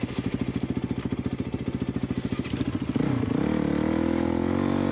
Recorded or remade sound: recorded